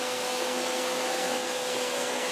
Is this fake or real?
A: fake